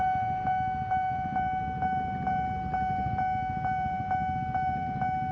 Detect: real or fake real